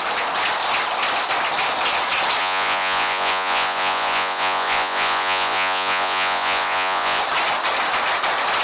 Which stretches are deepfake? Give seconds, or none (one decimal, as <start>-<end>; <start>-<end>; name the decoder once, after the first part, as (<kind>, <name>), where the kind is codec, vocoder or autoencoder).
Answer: 2.4-7.2 (vocoder, Vocos)